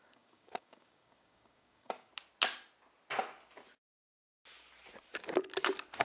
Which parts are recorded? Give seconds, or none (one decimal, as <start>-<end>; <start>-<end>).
2.1-6.0

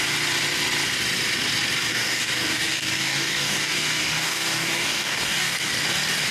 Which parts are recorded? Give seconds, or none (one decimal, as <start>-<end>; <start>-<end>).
0.0-1.9; 5.7-6.3

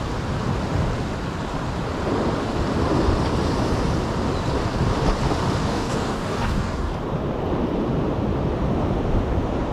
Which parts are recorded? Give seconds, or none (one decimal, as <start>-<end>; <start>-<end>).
0.0-5.6; 7.0-9.7

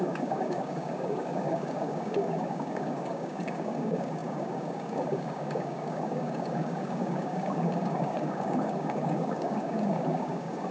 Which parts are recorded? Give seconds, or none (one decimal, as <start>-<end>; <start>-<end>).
none

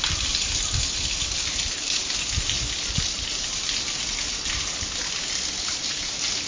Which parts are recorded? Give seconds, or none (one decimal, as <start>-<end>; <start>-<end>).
0.0-6.5

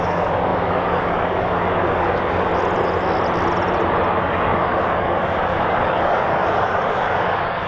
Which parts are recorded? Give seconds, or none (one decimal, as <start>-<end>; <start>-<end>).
2.5-4.2

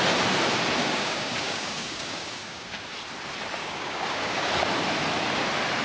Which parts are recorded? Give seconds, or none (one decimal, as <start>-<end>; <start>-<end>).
0.0-0.8; 2.9-3.6; 4.5-5.8